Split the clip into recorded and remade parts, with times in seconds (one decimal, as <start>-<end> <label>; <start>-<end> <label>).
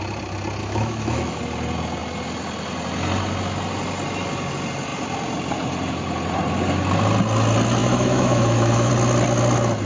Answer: 0.0-0.6 recorded; 0.6-1.4 remade; 1.4-7.8 recorded; 7.8-8.9 remade; 8.9-9.9 recorded